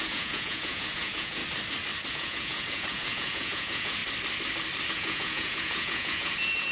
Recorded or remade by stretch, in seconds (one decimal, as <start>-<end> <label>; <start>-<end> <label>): 0.0-1.4 remade; 1.4-2.1 recorded; 2.1-4.0 remade; 4.0-4.9 recorded; 4.9-6.7 remade